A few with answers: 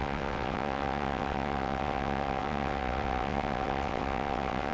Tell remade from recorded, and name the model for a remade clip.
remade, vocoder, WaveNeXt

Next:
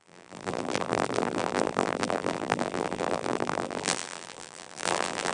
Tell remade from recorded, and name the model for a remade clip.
remade, vocoder, BigVGAN v2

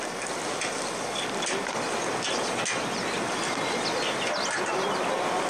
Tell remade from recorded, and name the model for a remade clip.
recorded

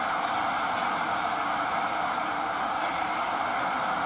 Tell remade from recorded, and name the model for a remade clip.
remade, vocoder, BigVGAN v2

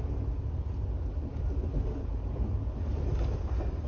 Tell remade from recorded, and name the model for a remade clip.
recorded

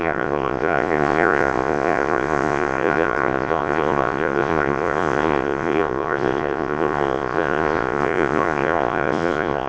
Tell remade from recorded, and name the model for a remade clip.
remade, vocoder, Vocos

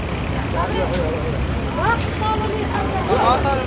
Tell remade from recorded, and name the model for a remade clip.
recorded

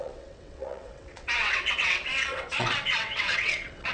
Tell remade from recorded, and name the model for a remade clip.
remade, vocoder, WaveNeXt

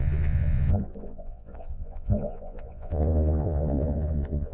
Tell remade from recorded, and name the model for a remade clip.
remade, vocoder, Vocos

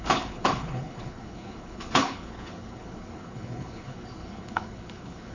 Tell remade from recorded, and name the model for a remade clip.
remade, codec, HILCodec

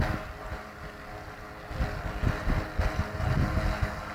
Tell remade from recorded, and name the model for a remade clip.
recorded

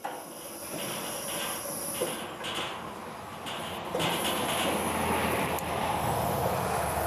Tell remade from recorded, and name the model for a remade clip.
recorded